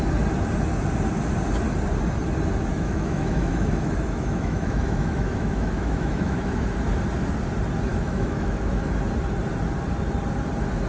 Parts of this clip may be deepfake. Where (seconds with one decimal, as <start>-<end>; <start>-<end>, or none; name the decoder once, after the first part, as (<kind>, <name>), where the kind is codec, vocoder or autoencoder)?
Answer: 2.7-6.8 (autoencoder, DAC-VAE); 7.9-8.9